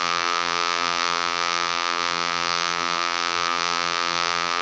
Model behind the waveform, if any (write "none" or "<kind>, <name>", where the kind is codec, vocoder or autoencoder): vocoder, BigVGAN v2